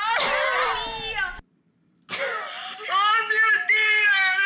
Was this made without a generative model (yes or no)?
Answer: yes